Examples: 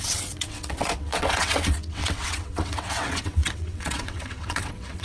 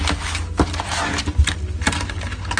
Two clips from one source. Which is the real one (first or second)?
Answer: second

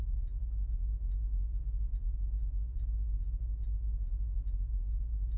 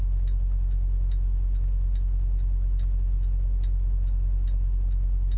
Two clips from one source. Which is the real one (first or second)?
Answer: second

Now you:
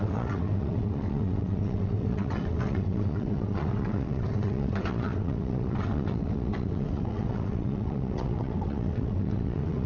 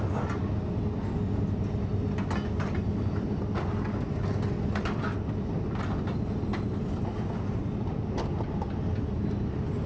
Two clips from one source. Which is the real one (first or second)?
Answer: second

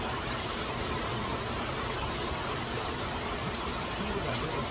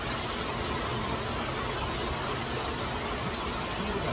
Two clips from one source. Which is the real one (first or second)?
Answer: second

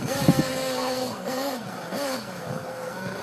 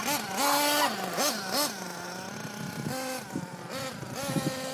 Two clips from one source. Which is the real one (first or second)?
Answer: second